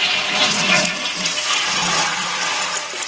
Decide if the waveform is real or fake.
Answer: fake